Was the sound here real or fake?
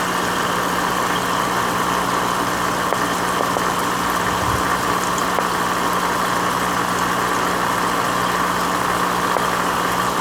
real